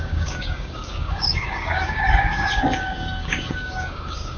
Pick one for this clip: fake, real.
fake